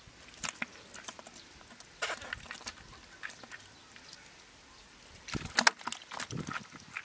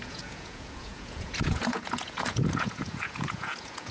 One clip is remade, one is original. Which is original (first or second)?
first